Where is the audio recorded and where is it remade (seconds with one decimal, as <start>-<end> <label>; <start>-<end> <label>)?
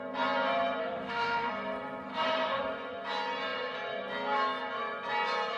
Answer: 0.0-0.8 recorded; 0.8-1.5 remade; 1.5-2.1 recorded; 2.1-2.6 remade; 2.6-5.6 recorded